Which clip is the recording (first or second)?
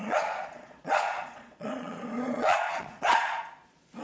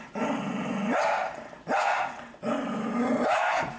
second